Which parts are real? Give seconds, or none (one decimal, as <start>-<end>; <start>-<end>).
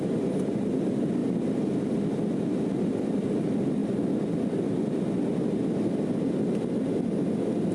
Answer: 0.0-7.7